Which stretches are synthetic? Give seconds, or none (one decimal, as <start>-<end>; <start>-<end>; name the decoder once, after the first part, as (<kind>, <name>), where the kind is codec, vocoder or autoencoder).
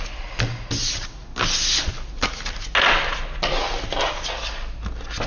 none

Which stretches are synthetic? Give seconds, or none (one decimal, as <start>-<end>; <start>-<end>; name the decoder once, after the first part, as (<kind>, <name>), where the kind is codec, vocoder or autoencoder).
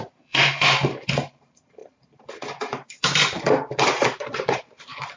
0.0-5.2 (vocoder, BigVGAN v2)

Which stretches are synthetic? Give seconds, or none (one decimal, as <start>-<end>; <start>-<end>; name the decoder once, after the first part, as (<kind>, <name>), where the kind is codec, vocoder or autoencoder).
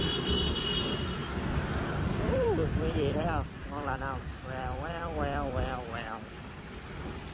0.0-1.2 (vocoder, BigVGAN v2); 1.9-7.3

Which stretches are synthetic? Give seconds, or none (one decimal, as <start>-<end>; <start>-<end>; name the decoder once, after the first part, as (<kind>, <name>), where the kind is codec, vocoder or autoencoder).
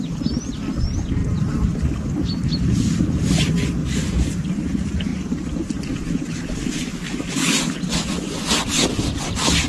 1.2-2.1 (vocoder, BigVGAN v2); 3.8-4.4; 5.1-7.0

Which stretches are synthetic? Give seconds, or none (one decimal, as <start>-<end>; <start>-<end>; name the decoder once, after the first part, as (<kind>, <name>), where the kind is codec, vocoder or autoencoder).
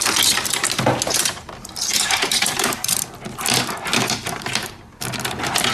1.9-3.0 (vocoder, BigVGAN v2); 3.9-4.8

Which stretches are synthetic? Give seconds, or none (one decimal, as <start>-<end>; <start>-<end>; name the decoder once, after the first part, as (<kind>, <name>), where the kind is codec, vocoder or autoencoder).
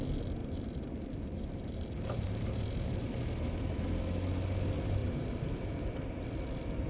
0.4-3.2 (vocoder, BigVGAN v2); 5.0-6.2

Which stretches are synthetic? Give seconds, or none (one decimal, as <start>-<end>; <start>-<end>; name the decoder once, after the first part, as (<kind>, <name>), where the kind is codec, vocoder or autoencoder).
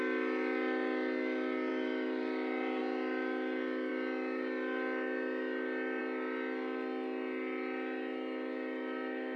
1.7-2.8 (vocoder, BigVGAN v2)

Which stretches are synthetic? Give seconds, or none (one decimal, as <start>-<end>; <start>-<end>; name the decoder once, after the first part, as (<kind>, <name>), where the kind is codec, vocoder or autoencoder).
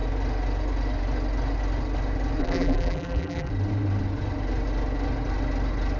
2.4-3.5 (vocoder, BigVGAN v2)